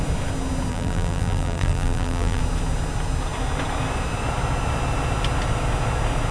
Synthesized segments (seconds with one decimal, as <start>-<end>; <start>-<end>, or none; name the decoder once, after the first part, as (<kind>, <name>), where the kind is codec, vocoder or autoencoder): 0.7-2.4 (vocoder, BigVGAN v2)